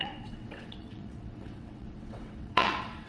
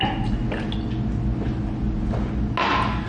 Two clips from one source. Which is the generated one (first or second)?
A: first